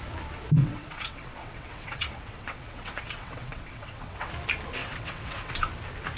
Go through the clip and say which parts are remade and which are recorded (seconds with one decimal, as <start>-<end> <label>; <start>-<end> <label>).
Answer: 0.0-0.6 recorded; 0.6-4.3 remade; 4.3-4.8 recorded; 4.8-5.5 remade; 5.5-6.2 recorded